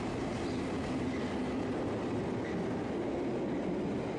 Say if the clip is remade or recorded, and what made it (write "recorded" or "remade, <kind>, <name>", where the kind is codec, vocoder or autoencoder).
recorded